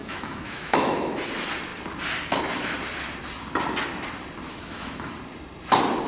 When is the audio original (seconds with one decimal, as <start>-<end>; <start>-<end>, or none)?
1.2-4.5; 5.1-6.1